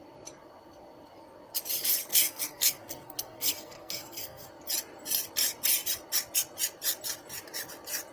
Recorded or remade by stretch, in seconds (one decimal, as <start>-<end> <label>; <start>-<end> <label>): 0.0-2.1 recorded; 2.1-4.5 remade; 4.5-8.1 recorded